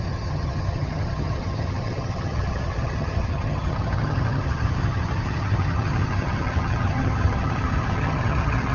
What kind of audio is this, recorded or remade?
remade